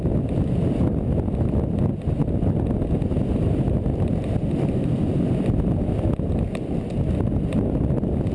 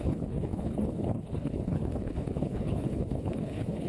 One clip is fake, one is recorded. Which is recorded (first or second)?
first